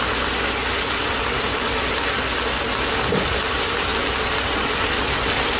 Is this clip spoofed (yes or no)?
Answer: no